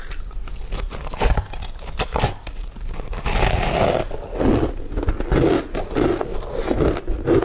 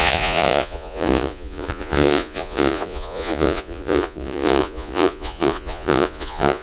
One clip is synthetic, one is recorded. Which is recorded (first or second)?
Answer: first